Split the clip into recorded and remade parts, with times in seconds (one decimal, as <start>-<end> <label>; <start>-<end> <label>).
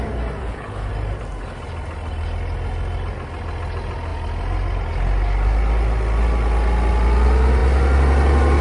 0.0-0.4 recorded; 0.4-0.9 remade; 0.9-8.6 recorded